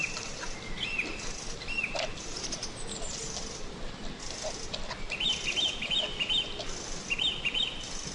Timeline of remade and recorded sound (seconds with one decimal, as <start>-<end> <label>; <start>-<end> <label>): 0.0-8.1 recorded